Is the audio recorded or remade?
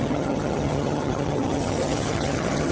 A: remade